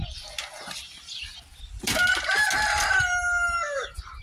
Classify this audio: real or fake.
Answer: real